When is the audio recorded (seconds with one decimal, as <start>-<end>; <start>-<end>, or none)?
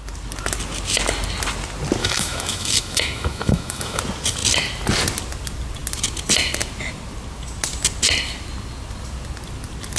0.0-2.0; 4.0-10.0